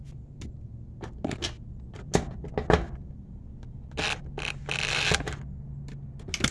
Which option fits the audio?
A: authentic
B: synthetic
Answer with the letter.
A